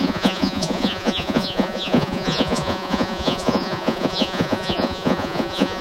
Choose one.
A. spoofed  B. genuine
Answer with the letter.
A